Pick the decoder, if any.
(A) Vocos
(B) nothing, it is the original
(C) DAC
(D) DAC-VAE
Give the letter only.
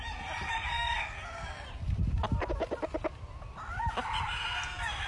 B